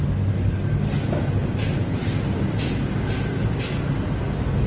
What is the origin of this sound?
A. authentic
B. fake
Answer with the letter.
A